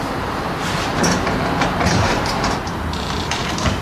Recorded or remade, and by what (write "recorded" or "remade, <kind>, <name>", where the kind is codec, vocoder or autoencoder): remade, vocoder, BigVGAN v2